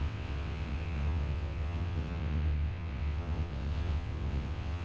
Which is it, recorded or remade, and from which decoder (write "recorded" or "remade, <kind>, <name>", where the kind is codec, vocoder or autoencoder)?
remade, vocoder, WaveNeXt